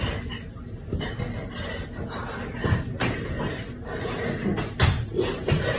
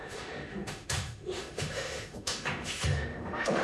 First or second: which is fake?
second